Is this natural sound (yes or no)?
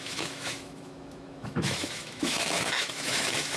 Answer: no